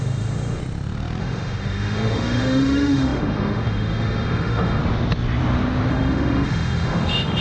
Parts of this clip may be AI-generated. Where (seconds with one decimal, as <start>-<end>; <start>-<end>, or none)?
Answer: 0.0-0.6; 1.2-4.8; 5.9-7.4